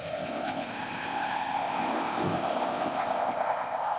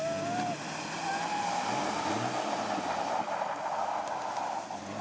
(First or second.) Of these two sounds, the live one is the second